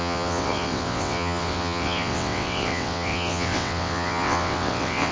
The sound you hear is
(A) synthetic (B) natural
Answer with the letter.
A